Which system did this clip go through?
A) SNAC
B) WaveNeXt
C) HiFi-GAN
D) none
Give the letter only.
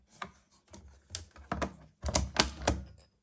D